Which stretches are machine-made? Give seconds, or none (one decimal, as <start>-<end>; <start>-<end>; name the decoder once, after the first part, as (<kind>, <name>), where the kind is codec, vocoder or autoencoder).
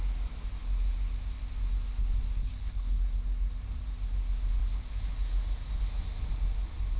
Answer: 2.4-3.0 (codec, HILCodec)